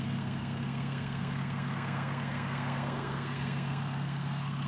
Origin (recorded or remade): remade